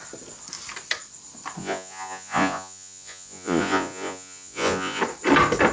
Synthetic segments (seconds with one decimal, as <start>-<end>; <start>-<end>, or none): 1.6-5.0